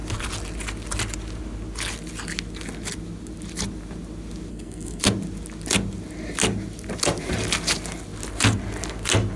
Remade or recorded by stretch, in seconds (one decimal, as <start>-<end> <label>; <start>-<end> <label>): 0.0-4.5 recorded; 4.5-5.0 remade; 5.0-9.4 recorded